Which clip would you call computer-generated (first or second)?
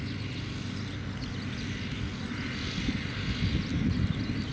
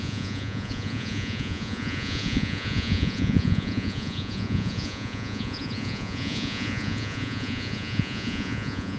second